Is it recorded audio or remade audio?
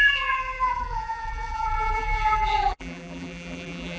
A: remade